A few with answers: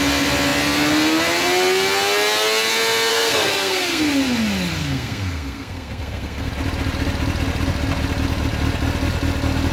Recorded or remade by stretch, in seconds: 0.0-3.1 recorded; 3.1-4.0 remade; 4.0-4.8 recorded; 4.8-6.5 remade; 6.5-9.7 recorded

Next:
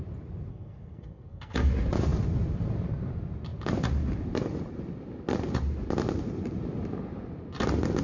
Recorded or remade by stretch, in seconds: 0.0-0.5 recorded; 0.5-1.7 remade; 1.7-8.0 recorded

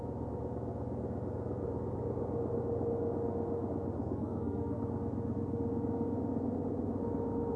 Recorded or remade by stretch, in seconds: 0.0-4.0 recorded; 4.0-4.8 remade; 4.8-7.6 recorded

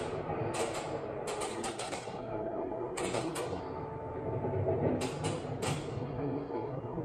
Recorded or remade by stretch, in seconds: 0.0-1.5 recorded; 1.5-3.6 remade; 3.6-5.9 recorded; 5.9-7.0 remade

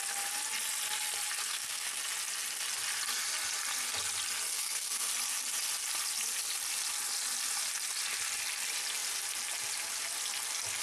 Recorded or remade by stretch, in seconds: 0.0-1.4 recorded; 1.4-2.0 remade; 2.0-4.5 recorded; 4.5-5.1 remade; 5.1-10.8 recorded

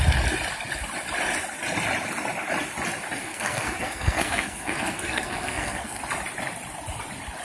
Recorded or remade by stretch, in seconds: 0.0-3.2 recorded; 3.2-6.0 remade; 6.0-7.4 recorded

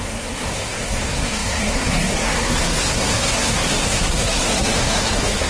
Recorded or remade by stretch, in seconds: 0.0-5.5 remade

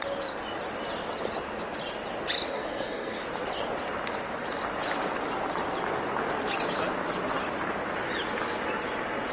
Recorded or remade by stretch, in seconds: 0.0-2.5 recorded; 2.5-3.2 remade; 3.2-9.3 recorded